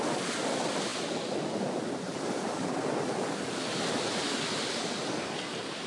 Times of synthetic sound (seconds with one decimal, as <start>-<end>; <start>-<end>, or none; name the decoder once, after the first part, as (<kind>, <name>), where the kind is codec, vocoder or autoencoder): none